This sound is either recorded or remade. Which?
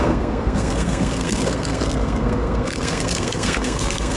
remade